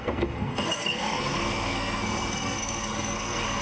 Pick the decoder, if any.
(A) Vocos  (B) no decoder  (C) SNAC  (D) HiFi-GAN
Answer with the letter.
C